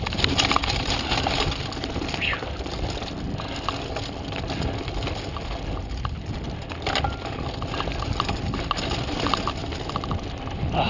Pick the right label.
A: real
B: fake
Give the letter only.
A